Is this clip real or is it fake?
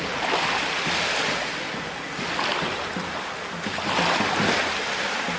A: real